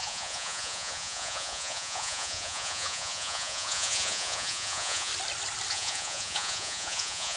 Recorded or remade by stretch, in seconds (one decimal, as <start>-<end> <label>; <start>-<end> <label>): 0.0-5.1 remade; 5.1-5.7 recorded; 5.7-7.4 remade